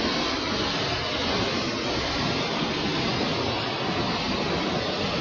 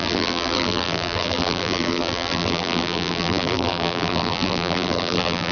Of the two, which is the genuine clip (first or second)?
first